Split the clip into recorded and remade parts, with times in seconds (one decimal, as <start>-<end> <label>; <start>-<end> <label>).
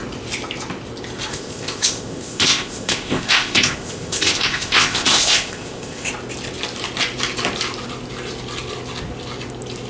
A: 0.0-1.3 recorded; 1.3-6.1 remade; 6.1-9.9 recorded